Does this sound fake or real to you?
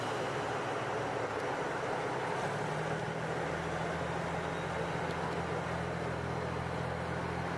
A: real